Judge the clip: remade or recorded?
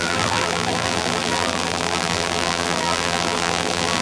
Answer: remade